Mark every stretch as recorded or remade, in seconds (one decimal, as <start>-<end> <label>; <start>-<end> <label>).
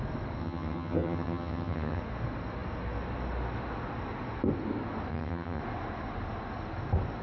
0.0-0.4 recorded; 0.4-2.0 remade; 2.0-5.1 recorded; 5.1-5.6 remade; 5.6-7.2 recorded